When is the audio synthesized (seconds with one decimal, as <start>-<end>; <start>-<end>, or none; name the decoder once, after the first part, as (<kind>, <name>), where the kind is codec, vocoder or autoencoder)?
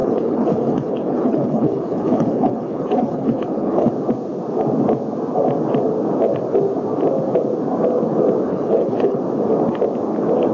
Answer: 0.0-3.9 (codec, HILCodec); 8.5-9.2